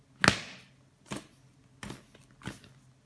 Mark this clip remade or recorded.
recorded